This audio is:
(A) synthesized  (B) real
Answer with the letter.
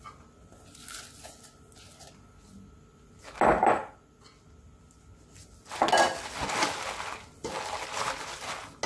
B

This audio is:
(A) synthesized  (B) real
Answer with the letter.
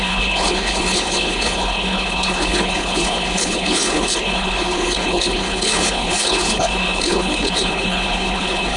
A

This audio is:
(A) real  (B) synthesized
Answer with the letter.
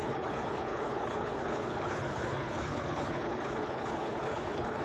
B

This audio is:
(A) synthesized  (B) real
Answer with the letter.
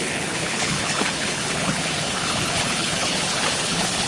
A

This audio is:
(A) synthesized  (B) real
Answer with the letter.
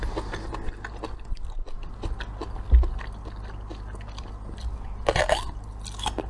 B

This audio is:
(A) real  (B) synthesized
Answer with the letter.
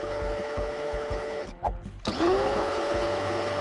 B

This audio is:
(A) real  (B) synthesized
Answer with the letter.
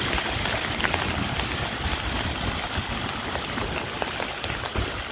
A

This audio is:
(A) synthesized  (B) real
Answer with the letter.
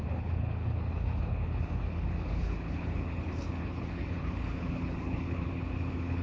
A